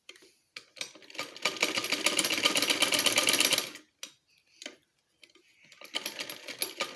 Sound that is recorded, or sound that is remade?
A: recorded